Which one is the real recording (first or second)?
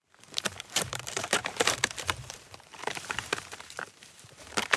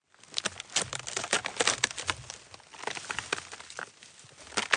second